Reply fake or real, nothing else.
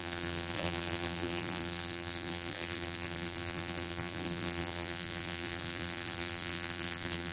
fake